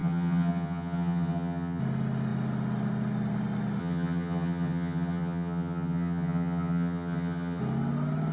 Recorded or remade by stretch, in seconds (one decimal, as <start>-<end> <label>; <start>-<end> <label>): 0.0-1.8 remade; 1.8-3.8 recorded; 3.8-7.6 remade; 7.6-8.3 recorded